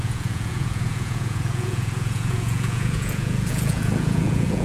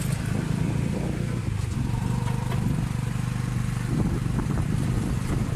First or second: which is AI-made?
first